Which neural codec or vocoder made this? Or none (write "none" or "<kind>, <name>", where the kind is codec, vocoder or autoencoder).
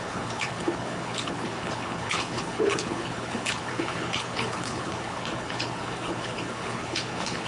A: codec, HILCodec